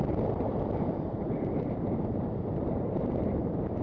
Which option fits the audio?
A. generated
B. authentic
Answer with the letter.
A